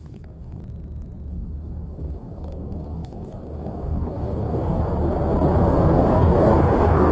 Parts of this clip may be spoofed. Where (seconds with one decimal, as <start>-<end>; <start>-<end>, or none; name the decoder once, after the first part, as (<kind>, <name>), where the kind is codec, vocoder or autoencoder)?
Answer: 0.0-0.6 (codec, DAC); 1.3-4.9; 5.6-7.1